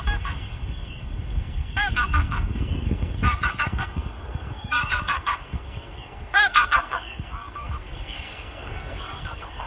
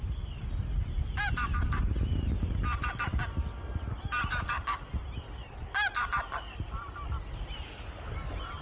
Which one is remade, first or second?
first